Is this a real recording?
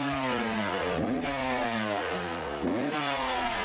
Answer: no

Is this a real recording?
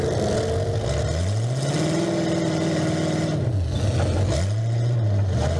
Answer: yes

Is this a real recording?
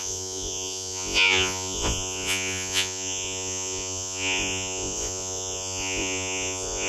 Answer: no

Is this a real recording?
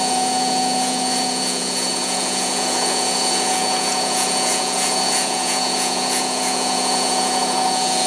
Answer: no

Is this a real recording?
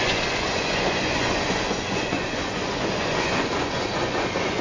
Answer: no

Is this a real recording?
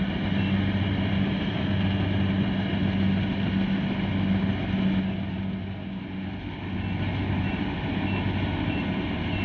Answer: yes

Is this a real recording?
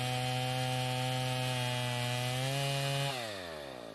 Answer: yes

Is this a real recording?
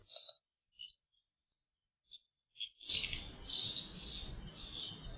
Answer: yes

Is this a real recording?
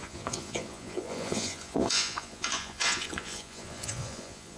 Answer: no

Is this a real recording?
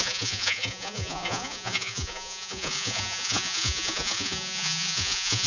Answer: no